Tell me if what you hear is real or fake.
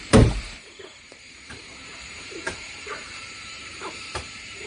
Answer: fake